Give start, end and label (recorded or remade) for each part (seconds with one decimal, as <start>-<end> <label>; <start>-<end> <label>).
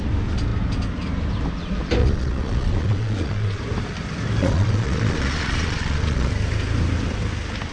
0.0-2.0 recorded; 2.0-3.6 remade; 3.6-4.4 recorded; 4.4-6.3 remade; 6.3-7.7 recorded